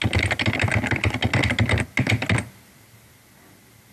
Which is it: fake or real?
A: real